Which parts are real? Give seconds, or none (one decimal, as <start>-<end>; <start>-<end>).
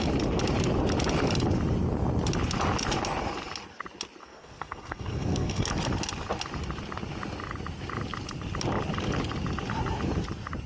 0.0-4.2; 5.7-10.7